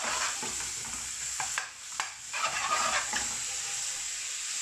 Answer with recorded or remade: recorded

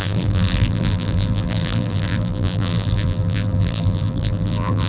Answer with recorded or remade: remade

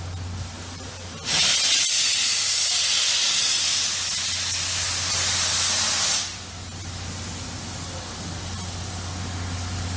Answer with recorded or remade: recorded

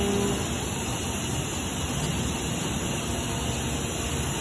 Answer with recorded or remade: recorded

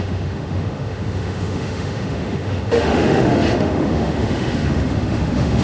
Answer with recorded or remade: remade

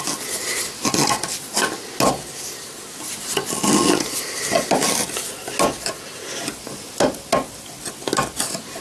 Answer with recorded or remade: recorded